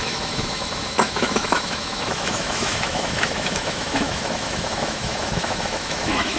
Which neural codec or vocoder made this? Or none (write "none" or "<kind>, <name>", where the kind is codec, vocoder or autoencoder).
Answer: autoencoder, DAC-VAE